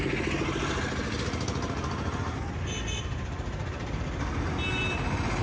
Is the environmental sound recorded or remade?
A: recorded